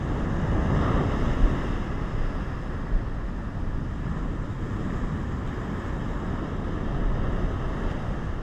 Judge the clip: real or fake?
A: real